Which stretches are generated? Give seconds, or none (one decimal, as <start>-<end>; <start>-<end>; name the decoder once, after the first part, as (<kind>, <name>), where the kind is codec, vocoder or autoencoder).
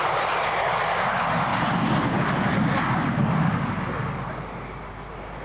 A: none